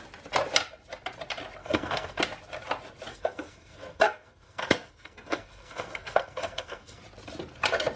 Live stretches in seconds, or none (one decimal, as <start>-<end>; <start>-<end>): 0.0-1.6; 2.2-3.1; 7.0-8.0